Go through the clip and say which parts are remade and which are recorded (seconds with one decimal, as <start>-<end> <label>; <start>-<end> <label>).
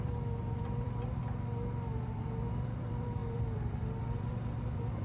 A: 0.0-1.2 remade; 1.2-2.0 recorded; 2.0-5.0 remade